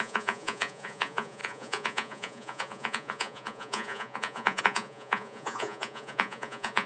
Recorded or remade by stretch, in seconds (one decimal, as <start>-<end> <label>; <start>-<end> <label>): 0.0-6.9 remade

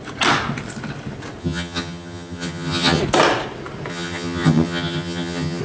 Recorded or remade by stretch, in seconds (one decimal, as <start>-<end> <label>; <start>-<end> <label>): 0.0-1.4 recorded; 1.4-3.0 remade; 3.0-3.9 recorded; 3.9-5.6 remade

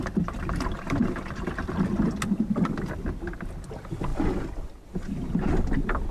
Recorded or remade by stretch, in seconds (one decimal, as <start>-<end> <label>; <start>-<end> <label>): 0.0-6.1 recorded

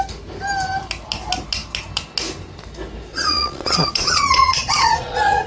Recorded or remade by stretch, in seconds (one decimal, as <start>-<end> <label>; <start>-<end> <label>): 0.0-3.1 recorded; 3.1-5.5 remade

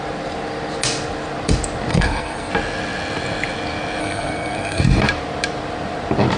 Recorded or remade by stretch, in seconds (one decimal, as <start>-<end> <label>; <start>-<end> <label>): 0.0-1.9 recorded; 1.9-2.5 remade; 2.5-4.0 recorded; 4.0-4.8 remade; 4.8-6.4 recorded

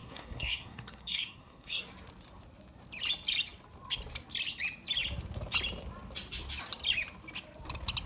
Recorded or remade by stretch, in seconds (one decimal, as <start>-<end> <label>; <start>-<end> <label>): 0.0-1.8 remade; 1.8-8.1 recorded

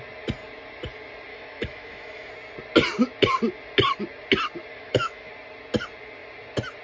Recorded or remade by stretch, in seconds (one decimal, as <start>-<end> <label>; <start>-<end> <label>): 0.0-1.3 recorded; 1.3-2.3 remade; 2.3-4.7 recorded; 4.7-5.3 remade; 5.3-6.8 recorded

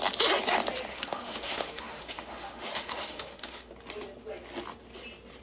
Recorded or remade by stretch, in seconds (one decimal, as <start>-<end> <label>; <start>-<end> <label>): 0.0-0.9 recorded; 0.9-3.7 remade; 3.7-5.4 recorded